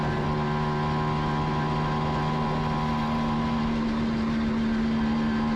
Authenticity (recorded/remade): recorded